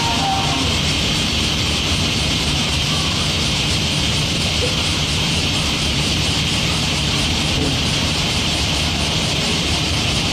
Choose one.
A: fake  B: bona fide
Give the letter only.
A